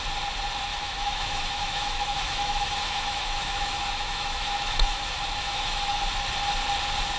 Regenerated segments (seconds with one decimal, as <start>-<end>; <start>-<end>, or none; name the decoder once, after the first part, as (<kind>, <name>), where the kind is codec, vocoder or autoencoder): 0.7-5.0 (autoencoder, DAC-VAE); 5.4-6.0